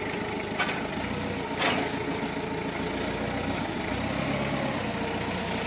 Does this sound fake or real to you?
real